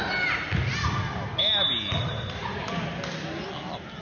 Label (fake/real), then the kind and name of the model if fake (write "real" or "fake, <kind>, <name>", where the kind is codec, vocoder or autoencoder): real